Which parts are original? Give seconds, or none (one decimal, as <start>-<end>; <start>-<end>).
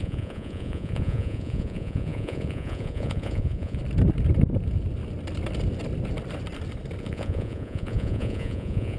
3.8-7.0